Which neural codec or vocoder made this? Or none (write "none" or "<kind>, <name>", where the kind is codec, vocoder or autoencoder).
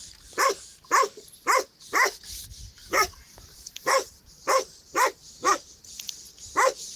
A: vocoder, BigVGAN v2